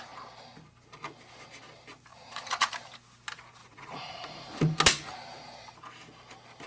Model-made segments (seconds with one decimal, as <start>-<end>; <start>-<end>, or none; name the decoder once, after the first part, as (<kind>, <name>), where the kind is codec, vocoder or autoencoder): 2.1-2.7 (vocoder, Vocos); 3.6-4.6